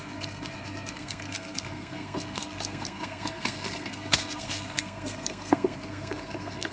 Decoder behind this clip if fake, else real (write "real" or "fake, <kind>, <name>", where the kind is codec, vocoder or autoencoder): fake, codec, SNAC